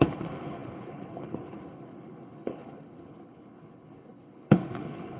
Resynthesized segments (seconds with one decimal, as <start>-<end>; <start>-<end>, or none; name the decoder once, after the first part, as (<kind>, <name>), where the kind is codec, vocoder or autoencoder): 0.0-5.2 (codec, HILCodec)